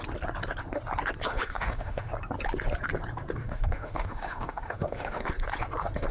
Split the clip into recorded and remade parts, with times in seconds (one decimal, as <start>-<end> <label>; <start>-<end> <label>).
0.0-1.3 recorded; 1.3-2.1 remade; 2.1-3.4 recorded; 3.4-5.3 remade; 5.3-6.1 recorded